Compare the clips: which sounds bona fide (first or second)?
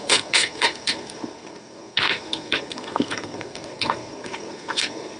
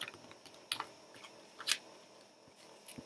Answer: second